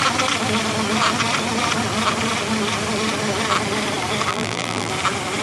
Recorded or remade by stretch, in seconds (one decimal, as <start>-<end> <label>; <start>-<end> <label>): 0.0-4.3 recorded; 4.3-4.9 remade; 4.9-5.4 recorded